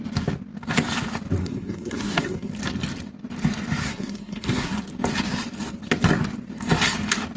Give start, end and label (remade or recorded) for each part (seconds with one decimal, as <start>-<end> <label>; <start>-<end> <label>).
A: 0.0-1.4 recorded; 1.4-2.5 remade; 2.5-3.8 recorded; 3.8-4.8 remade; 4.8-7.4 recorded